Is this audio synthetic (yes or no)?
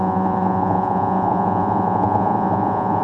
yes